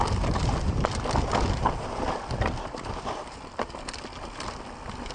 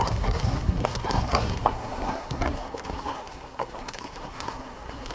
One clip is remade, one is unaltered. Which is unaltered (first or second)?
first